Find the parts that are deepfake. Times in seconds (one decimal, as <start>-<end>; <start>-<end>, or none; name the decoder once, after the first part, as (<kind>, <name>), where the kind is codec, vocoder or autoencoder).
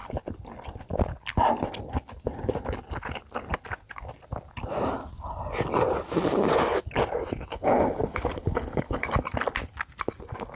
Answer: 7.5-9.1 (codec, HILCodec)